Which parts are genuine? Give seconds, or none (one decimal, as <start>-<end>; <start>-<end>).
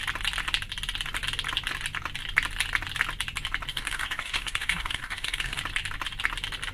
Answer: 0.0-3.7; 5.6-6.7